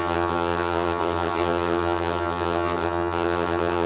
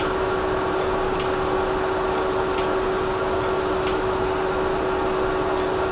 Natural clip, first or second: second